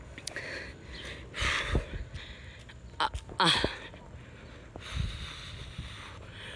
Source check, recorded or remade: recorded